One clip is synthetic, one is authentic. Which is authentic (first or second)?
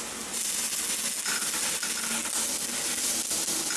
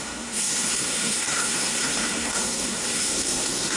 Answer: first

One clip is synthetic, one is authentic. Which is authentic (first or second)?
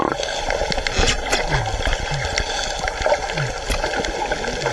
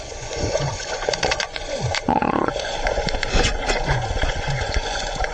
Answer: first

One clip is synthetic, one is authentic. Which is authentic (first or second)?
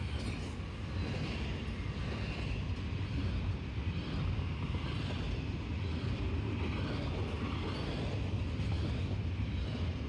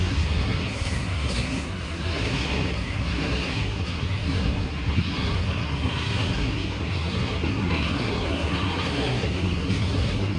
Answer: first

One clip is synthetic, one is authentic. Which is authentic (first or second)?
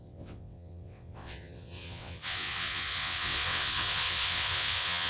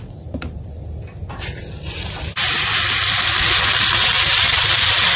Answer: second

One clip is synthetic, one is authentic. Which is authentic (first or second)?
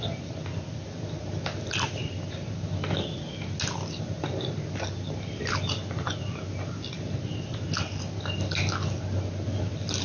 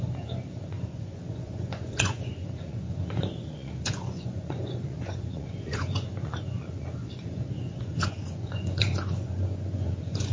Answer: first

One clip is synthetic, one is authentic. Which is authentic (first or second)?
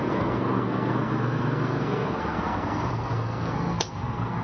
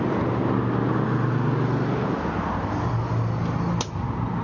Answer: second